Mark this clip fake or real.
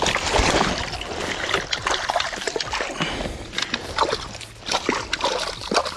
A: real